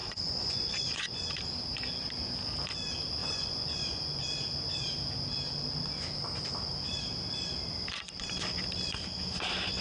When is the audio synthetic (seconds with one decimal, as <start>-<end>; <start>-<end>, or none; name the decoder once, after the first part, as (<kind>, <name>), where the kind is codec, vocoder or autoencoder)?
0.0-1.3 (vocoder, Vocos); 3.2-4.2